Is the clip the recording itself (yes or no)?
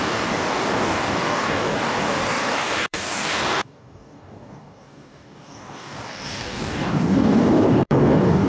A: no